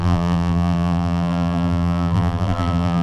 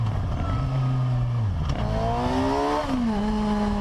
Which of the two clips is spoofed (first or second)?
first